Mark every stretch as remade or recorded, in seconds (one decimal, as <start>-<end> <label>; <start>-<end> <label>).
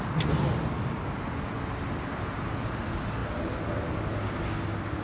0.0-5.0 recorded